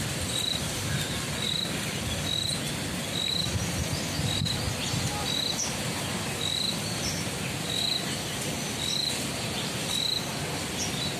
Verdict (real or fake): real